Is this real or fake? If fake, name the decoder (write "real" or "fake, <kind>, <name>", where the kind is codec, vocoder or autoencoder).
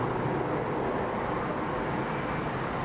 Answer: real